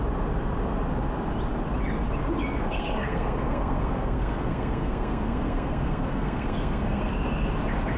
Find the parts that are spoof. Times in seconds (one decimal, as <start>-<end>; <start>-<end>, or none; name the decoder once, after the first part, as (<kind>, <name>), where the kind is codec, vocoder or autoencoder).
2.6-7.1 (codec, SNAC)